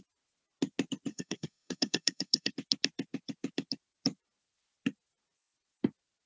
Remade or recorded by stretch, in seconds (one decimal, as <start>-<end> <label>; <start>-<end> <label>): 0.0-1.1 recorded; 1.1-2.5 remade; 2.5-6.3 recorded